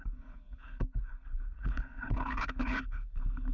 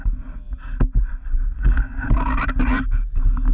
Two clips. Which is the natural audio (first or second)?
second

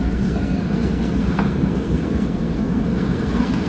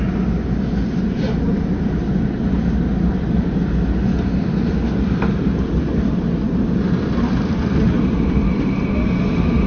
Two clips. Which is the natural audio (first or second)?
second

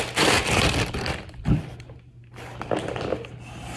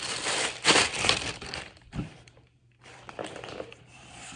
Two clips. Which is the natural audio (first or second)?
first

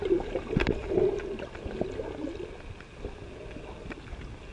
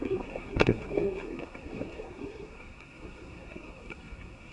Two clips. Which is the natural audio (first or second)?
first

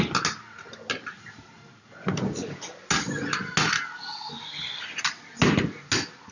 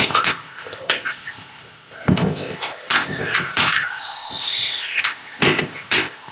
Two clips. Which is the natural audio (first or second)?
first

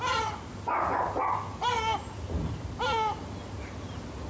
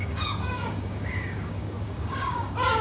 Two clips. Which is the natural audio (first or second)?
first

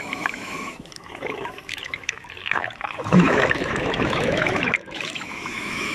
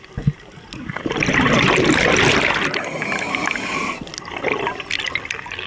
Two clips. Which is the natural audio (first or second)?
second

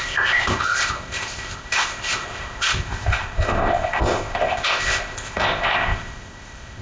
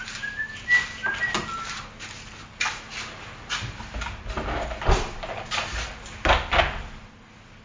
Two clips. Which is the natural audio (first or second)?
second